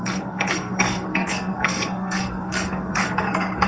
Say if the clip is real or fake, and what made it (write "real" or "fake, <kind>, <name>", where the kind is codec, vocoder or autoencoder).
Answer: fake, codec, SNAC